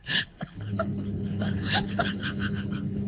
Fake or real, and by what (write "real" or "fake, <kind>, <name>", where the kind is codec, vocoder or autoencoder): fake, codec, HILCodec